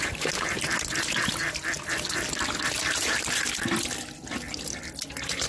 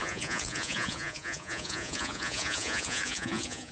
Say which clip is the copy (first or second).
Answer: second